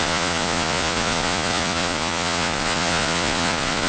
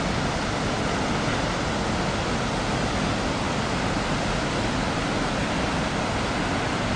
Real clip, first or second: second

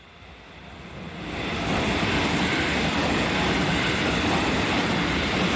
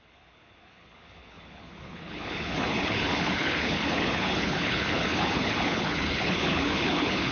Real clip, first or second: first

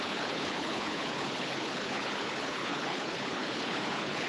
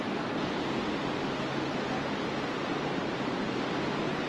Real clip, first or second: second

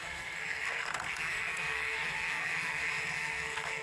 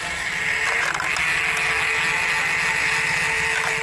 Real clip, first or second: second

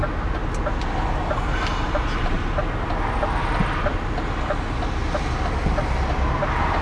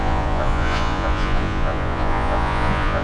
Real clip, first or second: first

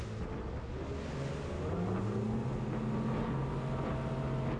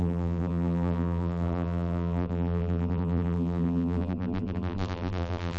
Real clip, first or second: first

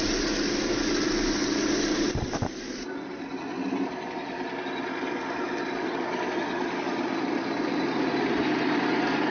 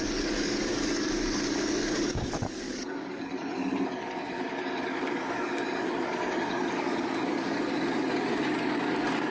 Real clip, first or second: first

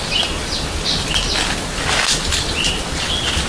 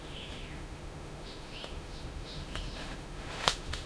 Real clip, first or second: first